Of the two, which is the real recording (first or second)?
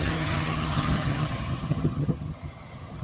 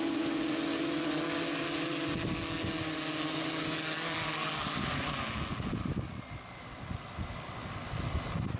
second